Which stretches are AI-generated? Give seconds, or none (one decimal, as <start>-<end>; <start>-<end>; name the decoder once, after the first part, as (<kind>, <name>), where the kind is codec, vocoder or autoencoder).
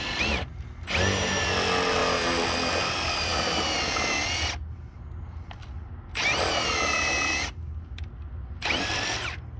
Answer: none